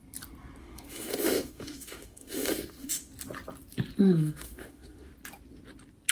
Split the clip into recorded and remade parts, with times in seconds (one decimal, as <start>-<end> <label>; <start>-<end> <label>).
0.0-0.6 recorded; 0.6-3.1 remade; 3.1-4.0 recorded; 4.0-5.1 remade; 5.1-6.1 recorded

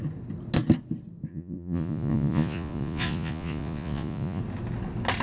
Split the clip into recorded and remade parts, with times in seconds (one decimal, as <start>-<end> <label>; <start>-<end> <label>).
0.0-1.3 recorded; 1.3-4.4 remade; 4.4-5.2 recorded

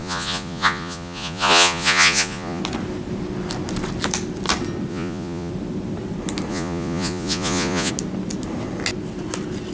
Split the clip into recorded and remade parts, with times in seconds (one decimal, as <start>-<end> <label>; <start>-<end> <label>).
0.0-2.6 remade; 2.6-4.9 recorded; 4.9-5.5 remade; 5.5-6.5 recorded; 6.5-7.9 remade; 7.9-9.7 recorded

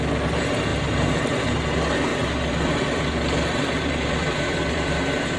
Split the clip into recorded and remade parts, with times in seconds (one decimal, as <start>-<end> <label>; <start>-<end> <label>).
0.0-0.7 recorded; 0.7-1.6 remade; 1.6-2.1 recorded; 2.1-5.4 remade

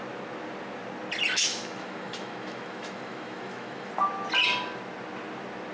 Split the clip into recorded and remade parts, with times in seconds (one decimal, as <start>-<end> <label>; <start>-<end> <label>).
0.0-1.5 recorded; 1.5-3.9 remade; 3.9-5.7 recorded